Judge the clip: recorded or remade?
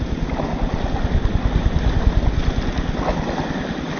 recorded